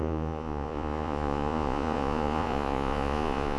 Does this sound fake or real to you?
fake